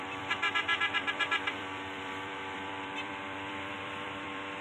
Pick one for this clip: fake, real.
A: fake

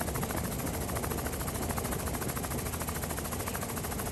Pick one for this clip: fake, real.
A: real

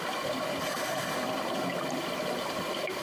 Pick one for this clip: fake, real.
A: real